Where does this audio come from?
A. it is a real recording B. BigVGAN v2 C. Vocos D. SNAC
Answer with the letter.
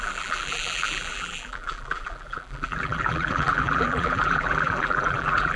B